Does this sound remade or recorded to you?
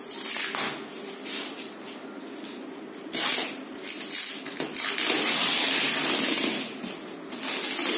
recorded